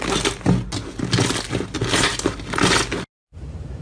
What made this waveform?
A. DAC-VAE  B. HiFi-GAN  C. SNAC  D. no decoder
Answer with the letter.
D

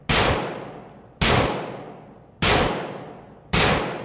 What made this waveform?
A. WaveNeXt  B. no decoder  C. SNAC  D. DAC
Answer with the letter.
B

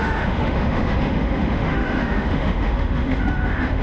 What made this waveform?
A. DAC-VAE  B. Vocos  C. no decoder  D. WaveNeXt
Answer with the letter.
A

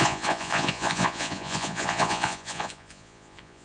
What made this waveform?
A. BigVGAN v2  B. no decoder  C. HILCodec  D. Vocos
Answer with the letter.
D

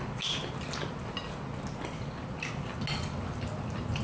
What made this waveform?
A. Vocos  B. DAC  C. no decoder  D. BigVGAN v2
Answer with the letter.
C